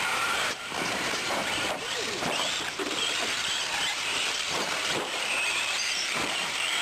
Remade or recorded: remade